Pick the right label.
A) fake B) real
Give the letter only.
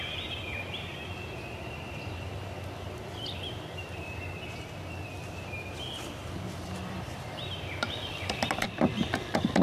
A